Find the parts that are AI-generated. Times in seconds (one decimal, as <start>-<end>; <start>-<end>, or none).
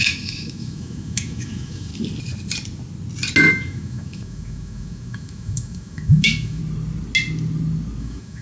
0.0-1.9; 3.5-6.6; 8.0-8.4